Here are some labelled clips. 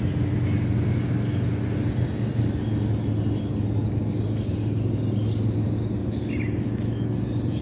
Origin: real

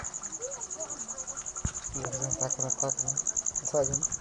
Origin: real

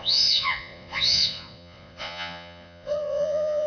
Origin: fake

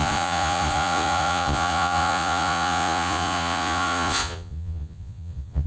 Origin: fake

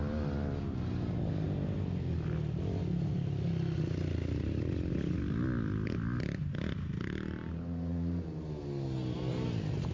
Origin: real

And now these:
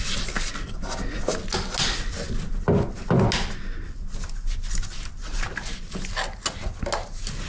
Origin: real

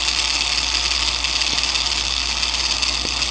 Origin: real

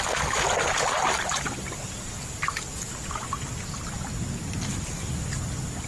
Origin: real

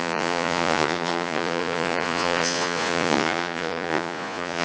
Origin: fake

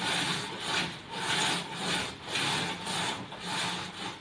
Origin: real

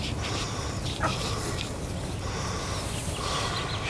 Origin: real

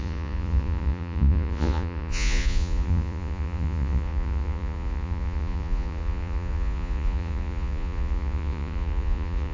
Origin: fake